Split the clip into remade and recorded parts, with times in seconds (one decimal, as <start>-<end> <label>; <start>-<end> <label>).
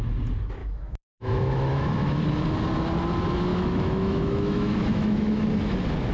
0.0-0.6 recorded; 0.6-2.2 remade; 2.2-3.5 recorded; 3.5-5.5 remade; 5.5-6.1 recorded